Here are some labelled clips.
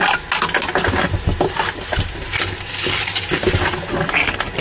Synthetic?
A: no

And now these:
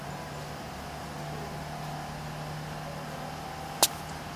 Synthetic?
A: no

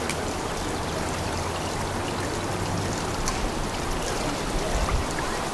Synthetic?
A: no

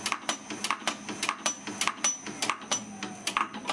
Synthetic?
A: no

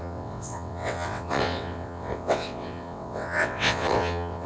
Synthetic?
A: yes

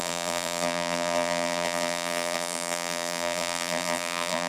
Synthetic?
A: yes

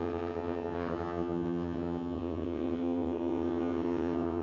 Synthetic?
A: yes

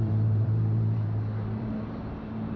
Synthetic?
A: yes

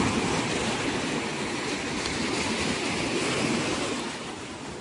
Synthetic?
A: yes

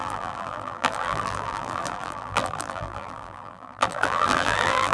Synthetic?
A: yes